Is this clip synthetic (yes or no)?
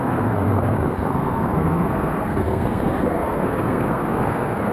yes